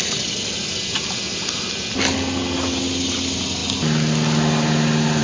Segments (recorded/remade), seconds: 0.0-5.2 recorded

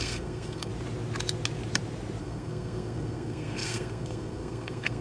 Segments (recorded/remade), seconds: 0.0-0.7 remade; 0.7-2.2 recorded; 2.2-5.0 remade

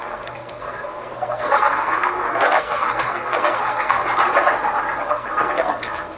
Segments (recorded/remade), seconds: 0.0-4.0 remade; 4.0-5.1 recorded; 5.1-6.2 remade

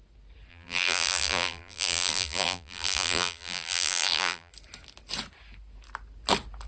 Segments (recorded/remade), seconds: 0.0-0.5 recorded; 0.5-4.5 remade; 4.5-6.7 recorded

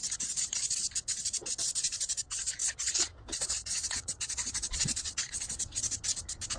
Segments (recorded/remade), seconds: 0.0-2.6 recorded; 2.6-5.8 remade; 5.8-6.6 recorded